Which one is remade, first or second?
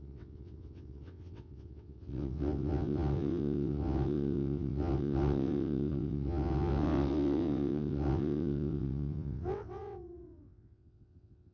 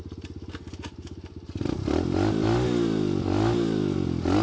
first